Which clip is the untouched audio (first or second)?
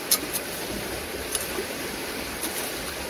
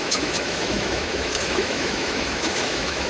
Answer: first